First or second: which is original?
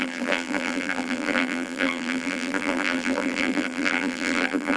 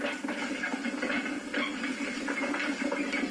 second